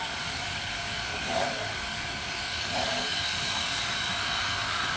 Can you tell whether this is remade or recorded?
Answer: remade